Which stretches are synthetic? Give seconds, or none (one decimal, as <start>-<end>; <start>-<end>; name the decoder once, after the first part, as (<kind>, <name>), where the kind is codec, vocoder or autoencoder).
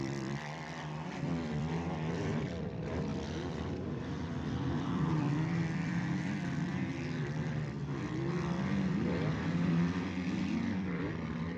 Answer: 0.0-6.9 (vocoder, BigVGAN v2); 9.3-11.6